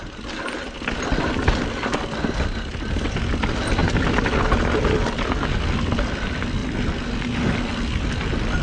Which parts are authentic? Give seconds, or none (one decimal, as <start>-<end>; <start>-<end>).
0.0-8.6

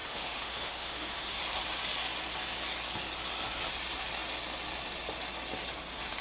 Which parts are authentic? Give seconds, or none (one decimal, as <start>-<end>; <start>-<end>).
1.4-6.2

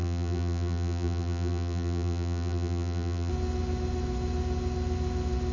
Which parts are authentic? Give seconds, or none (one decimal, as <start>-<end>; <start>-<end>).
3.3-5.5

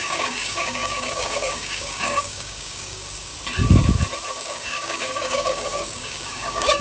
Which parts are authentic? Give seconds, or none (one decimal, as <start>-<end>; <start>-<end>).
3.3-4.4